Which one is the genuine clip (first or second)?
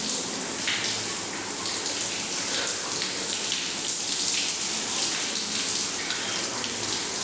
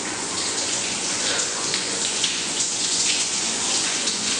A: first